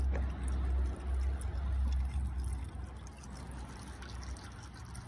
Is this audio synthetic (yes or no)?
no